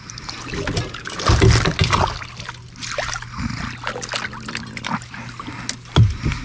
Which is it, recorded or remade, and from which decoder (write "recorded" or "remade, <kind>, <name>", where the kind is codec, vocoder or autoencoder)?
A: recorded